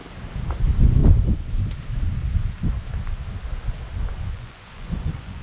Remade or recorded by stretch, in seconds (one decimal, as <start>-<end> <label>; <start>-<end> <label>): 0.0-0.6 recorded; 0.6-1.0 remade; 1.0-4.2 recorded; 4.2-5.4 remade